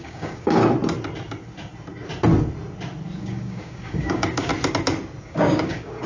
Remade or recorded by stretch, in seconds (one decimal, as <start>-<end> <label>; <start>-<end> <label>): 0.0-0.6 remade; 0.6-3.2 recorded; 3.2-4.5 remade; 4.5-5.2 recorded; 5.2-6.1 remade